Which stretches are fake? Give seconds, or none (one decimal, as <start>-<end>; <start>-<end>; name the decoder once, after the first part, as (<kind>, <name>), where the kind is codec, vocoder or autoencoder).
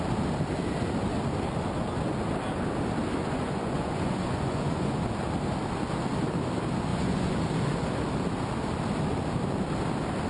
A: 3.2-5.0 (vocoder, Vocos); 6.9-7.4